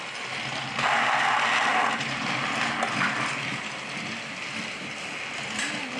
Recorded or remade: recorded